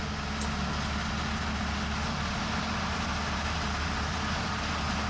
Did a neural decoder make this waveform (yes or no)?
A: no